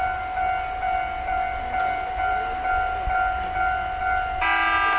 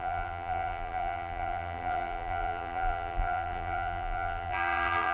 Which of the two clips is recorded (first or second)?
first